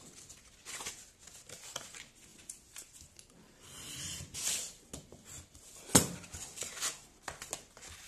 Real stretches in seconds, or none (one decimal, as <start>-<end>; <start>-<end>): 0.0-8.1